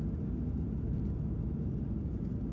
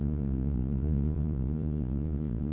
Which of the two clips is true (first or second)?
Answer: first